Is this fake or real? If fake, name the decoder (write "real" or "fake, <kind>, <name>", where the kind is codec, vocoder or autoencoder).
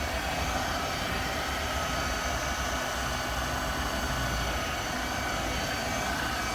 real